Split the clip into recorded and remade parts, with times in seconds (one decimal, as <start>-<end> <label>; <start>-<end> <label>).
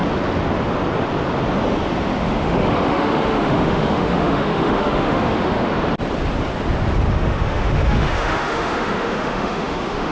0.0-2.2 recorded; 2.2-5.7 remade; 5.7-7.1 recorded; 7.1-10.1 remade